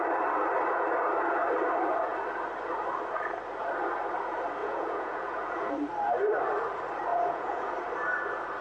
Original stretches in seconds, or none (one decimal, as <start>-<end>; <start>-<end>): 0.0-4.6; 5.7-7.1; 7.7-8.6

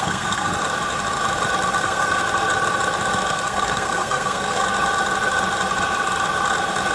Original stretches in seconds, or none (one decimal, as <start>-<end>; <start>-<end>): 0.5-1.8; 2.2-3.3; 4.6-6.9